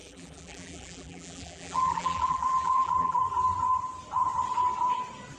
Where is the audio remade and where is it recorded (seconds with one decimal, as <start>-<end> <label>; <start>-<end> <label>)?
0.0-3.2 remade; 3.2-5.4 recorded